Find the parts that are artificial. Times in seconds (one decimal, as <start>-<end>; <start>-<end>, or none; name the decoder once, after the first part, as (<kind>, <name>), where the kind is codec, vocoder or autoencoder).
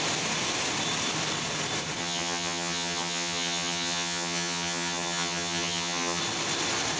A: 2.0-6.2 (vocoder, HiFi-GAN)